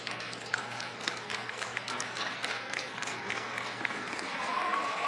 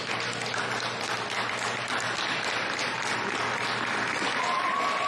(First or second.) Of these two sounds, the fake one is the first